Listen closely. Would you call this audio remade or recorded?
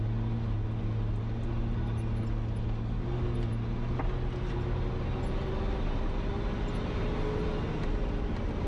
recorded